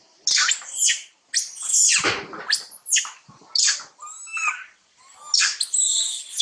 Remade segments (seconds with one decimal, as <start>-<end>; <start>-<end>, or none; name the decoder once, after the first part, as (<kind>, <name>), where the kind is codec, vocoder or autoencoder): none